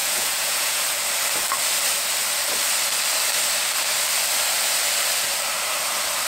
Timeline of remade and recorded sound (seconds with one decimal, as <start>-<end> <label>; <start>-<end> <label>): 0.0-0.8 remade; 0.8-6.3 recorded